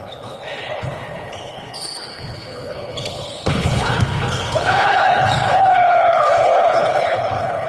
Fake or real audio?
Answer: fake